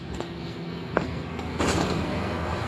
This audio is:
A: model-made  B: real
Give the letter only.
A